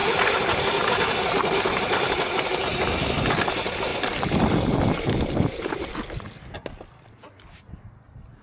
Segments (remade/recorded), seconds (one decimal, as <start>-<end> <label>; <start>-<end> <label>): 0.0-1.1 remade; 1.1-3.9 recorded; 3.9-5.9 remade; 5.9-8.4 recorded

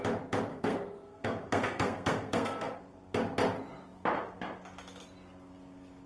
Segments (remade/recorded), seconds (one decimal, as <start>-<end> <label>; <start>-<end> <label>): 0.0-0.5 recorded; 0.5-2.8 remade; 2.8-6.1 recorded

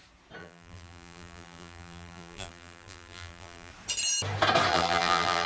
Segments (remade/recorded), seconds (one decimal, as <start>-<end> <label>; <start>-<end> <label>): 0.0-0.4 recorded; 0.4-3.7 remade; 3.7-4.7 recorded; 4.7-5.5 remade

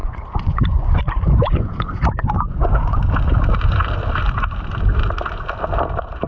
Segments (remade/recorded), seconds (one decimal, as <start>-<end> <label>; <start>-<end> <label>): 0.0-1.0 remade; 1.0-1.4 recorded; 1.4-3.0 remade; 3.0-6.3 recorded